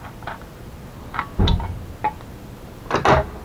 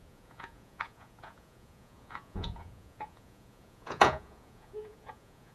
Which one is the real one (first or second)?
first